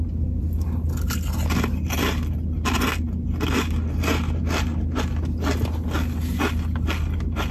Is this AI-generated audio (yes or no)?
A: no